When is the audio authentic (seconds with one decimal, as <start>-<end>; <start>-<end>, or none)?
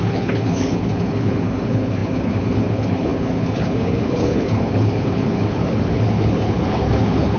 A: none